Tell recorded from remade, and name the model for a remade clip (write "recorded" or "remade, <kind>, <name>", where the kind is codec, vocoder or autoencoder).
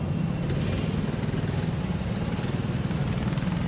recorded